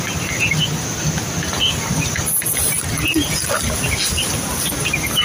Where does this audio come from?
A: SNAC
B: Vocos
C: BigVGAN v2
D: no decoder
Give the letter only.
D